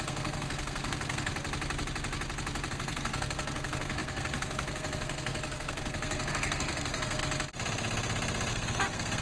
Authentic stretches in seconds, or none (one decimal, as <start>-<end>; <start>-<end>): 1.3-2.7; 7.2-8.5